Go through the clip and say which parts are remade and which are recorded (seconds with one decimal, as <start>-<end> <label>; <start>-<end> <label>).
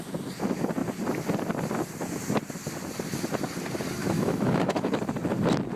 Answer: 0.0-4.0 recorded; 4.0-5.0 remade; 5.0-5.8 recorded